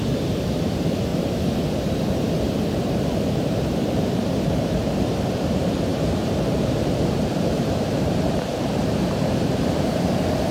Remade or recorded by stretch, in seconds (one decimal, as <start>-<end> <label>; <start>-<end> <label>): 0.0-1.1 remade; 1.1-2.8 recorded; 2.8-10.5 remade

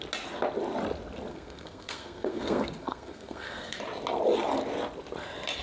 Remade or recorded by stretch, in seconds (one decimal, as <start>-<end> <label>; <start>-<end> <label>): 0.0-1.3 recorded; 1.3-3.8 remade; 3.8-5.6 recorded